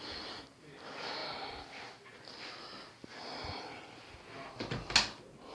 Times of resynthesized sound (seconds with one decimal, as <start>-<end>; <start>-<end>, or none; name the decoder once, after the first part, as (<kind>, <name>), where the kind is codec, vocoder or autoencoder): none